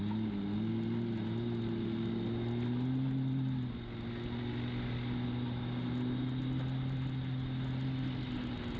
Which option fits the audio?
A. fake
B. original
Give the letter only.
B